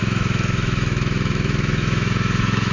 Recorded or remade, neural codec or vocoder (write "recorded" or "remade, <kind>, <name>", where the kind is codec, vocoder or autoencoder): remade, autoencoder, DAC-VAE